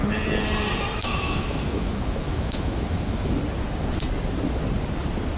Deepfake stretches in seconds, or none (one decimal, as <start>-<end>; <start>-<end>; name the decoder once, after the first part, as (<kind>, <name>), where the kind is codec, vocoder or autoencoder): 1.0-3.3 (autoencoder, DAC-VAE)